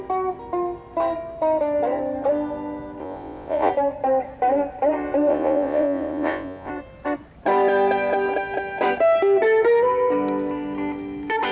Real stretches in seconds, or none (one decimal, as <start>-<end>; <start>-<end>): 0.0-3.0; 3.7-5.3; 6.7-11.5